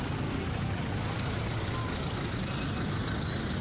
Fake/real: real